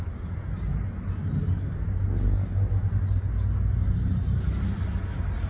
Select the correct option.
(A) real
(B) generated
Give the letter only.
A